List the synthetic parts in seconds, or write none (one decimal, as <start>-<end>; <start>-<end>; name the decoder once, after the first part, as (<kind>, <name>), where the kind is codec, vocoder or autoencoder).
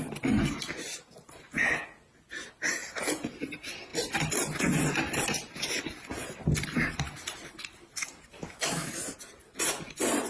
8.3-8.9 (autoencoder, DAC-VAE)